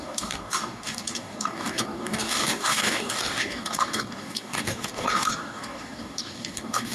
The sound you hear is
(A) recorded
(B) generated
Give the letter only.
B